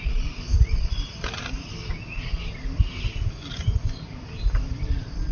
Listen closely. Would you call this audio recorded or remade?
recorded